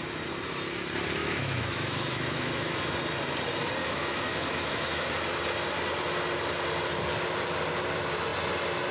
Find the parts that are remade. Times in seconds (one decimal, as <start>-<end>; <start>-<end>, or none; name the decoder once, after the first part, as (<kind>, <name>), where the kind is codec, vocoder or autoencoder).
1.2-2.9 (autoencoder, DAC-VAE); 3.8-5.1